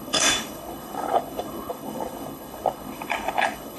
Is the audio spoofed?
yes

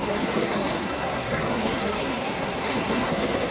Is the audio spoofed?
yes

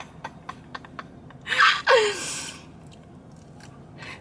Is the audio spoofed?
no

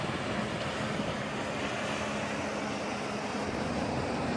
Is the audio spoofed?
no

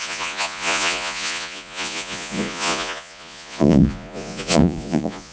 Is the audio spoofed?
yes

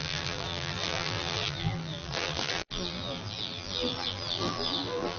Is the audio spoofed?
yes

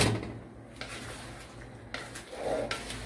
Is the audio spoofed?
no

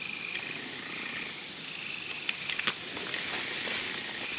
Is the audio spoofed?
no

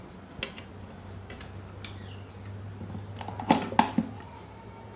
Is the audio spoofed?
no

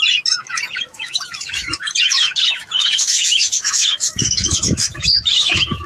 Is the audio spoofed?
yes